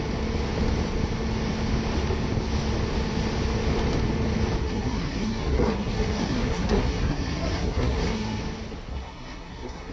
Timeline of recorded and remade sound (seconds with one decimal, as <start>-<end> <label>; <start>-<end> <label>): 0.0-4.6 recorded; 4.6-8.4 remade; 8.4-8.9 recorded; 8.9-9.9 remade